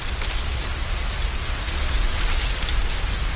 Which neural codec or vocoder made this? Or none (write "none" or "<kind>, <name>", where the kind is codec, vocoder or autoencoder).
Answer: none